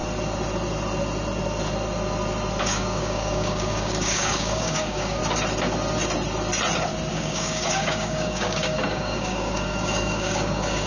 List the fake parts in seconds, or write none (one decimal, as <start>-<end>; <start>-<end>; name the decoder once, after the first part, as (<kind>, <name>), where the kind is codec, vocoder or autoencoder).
2.6-5.2 (codec, DAC); 7.1-10.9

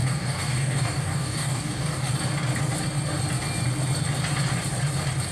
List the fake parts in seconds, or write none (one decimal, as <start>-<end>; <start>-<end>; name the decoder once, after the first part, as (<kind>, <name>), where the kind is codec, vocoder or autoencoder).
0.0-2.1 (codec, DAC)

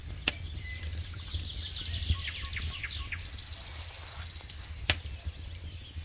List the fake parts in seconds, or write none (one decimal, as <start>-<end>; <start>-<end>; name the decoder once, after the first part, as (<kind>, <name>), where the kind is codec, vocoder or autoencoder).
none

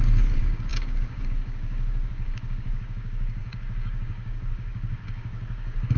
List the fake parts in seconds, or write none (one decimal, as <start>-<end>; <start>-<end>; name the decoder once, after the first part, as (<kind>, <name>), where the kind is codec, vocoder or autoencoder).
0.0-6.0 (codec, DAC)

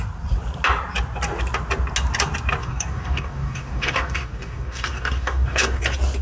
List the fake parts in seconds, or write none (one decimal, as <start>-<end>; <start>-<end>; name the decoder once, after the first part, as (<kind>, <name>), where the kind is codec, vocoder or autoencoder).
2.6-5.8 (codec, DAC)

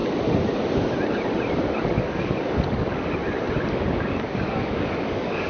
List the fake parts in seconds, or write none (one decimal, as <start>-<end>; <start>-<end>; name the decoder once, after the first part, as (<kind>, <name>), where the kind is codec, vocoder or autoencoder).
1.8-3.2 (codec, DAC); 3.7-5.5

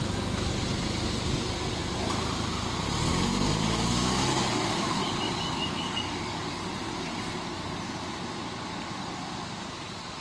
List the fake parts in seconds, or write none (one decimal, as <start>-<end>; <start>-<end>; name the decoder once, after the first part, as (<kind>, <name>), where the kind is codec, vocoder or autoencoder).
3.1-6.6 (codec, DAC)